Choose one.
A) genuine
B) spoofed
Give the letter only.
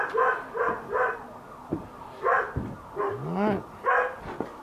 A